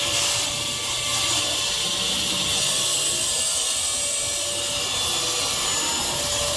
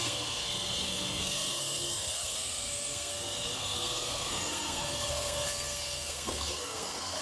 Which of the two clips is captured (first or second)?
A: first